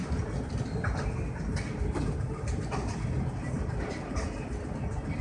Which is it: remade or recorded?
recorded